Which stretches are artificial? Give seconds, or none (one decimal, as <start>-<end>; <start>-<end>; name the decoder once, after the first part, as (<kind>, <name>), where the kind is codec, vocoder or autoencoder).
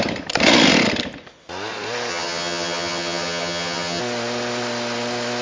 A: 2.1-4.0 (vocoder, HiFi-GAN)